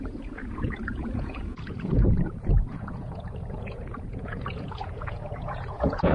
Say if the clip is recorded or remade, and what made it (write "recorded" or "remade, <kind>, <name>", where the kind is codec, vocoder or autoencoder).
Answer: remade, vocoder, Vocos